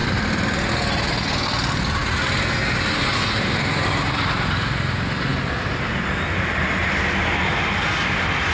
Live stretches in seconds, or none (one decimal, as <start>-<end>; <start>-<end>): 0.7-8.5